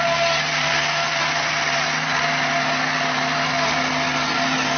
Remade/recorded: recorded